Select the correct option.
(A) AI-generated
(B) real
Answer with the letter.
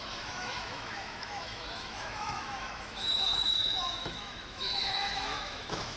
A